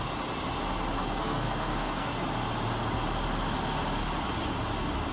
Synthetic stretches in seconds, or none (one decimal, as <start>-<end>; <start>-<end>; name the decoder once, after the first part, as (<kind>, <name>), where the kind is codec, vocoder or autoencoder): 1.0-2.1 (codec, SNAC)